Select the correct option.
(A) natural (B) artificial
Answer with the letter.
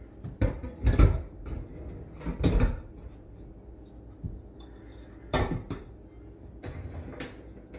A